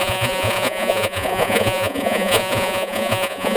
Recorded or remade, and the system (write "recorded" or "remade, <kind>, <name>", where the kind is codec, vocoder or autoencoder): remade, vocoder, Vocos